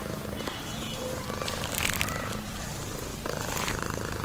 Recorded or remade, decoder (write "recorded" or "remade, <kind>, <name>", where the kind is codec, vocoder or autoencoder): remade, vocoder, BigVGAN v2